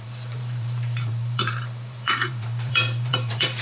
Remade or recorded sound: remade